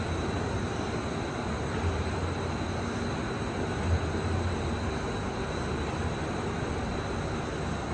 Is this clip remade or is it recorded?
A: recorded